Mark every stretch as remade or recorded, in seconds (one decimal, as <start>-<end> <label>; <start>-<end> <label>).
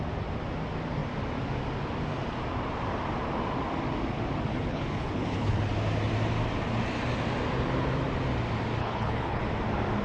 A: 0.0-4.5 recorded; 4.5-5.6 remade; 5.6-8.8 recorded; 8.8-9.4 remade; 9.4-10.0 recorded